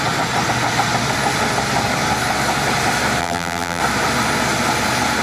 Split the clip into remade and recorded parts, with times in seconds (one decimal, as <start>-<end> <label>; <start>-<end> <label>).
0.0-3.2 recorded; 3.2-3.8 remade; 3.8-5.2 recorded